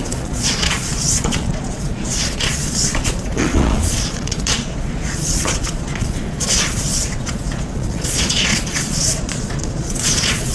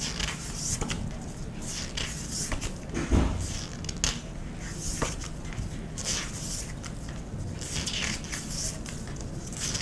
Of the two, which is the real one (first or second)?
second